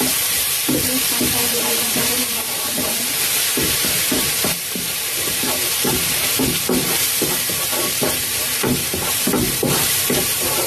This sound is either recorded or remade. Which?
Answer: remade